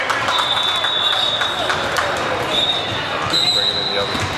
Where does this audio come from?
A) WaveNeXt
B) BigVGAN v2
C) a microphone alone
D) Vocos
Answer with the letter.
C